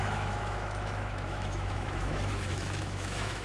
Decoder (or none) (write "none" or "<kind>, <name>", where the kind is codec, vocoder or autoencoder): autoencoder, DAC-VAE